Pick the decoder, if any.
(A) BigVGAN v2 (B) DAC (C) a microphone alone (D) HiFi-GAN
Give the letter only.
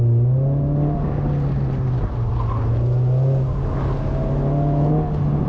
C